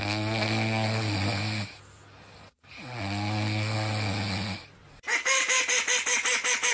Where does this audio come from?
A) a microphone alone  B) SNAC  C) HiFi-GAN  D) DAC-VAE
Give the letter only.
A